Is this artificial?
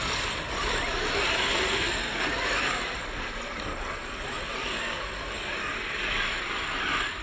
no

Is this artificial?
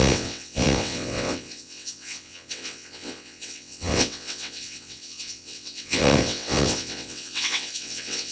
yes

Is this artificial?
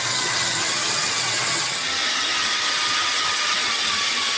yes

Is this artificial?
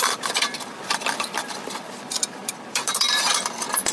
yes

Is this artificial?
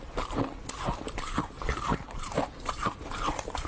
no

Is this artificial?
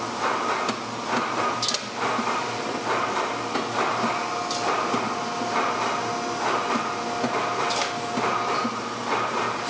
no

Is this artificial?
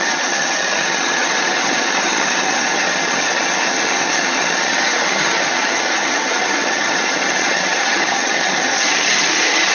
yes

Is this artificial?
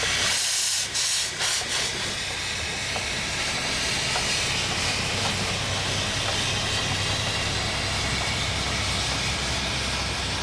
no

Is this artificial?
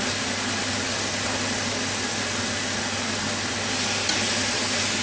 no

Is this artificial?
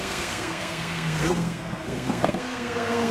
yes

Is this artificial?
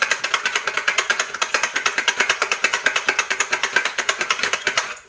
yes